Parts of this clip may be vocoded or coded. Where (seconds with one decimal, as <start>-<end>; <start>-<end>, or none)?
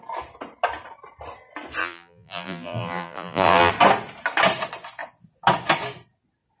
1.8-3.7